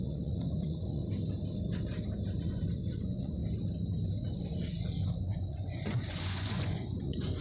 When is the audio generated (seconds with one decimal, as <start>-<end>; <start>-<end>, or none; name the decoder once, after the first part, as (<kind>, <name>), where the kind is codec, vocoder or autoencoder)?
0.0-1.0 (vocoder, Vocos); 2.4-3.4; 4.3-7.4